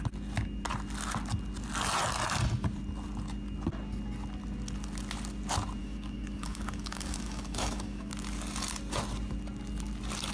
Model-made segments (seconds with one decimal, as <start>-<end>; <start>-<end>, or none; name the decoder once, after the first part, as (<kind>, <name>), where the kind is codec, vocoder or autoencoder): 5.8-8.1 (codec, DAC)